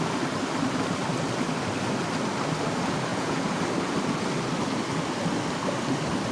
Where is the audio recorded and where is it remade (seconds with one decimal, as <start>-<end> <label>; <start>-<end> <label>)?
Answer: 0.0-3.1 recorded; 3.1-3.6 remade; 3.6-6.3 recorded